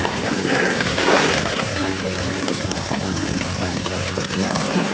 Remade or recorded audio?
remade